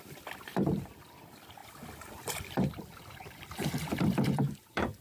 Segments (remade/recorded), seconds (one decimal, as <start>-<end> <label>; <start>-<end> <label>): 0.0-5.0 remade